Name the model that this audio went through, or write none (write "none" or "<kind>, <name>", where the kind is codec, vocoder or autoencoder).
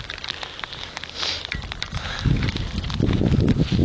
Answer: none